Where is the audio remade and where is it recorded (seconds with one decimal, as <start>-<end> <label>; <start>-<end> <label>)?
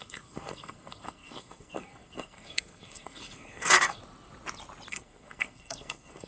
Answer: 0.0-4.0 remade; 4.0-4.9 recorded; 4.9-6.3 remade